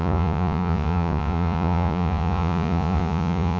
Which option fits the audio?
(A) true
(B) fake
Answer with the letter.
B